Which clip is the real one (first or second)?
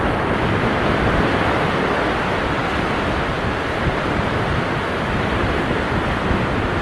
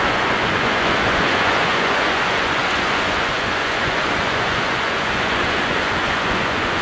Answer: first